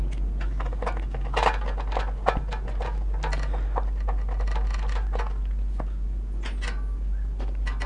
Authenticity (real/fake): real